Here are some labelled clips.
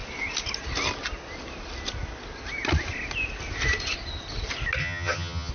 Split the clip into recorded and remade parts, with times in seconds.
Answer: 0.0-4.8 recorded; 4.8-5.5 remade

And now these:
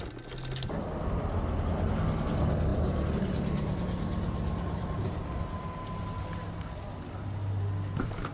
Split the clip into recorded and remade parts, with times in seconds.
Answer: 0.0-8.3 recorded

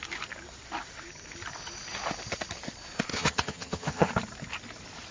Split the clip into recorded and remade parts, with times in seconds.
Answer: 0.0-3.1 recorded; 3.1-4.1 remade; 4.1-5.1 recorded

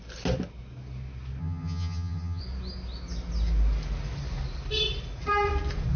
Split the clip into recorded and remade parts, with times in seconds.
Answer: 0.0-1.4 recorded; 1.4-2.4 remade; 2.4-6.0 recorded

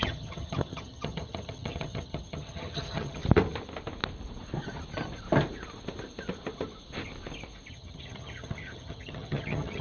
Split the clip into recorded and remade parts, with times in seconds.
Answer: 0.0-3.2 remade; 3.2-7.7 recorded; 7.7-9.8 remade

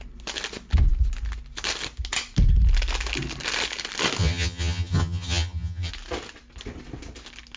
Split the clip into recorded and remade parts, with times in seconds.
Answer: 0.0-4.2 recorded; 4.2-5.9 remade; 5.9-7.6 recorded